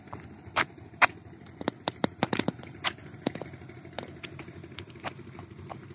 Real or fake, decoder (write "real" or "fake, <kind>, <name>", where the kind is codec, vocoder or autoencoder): fake, vocoder, BigVGAN v2